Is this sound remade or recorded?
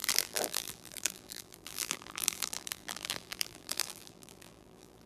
remade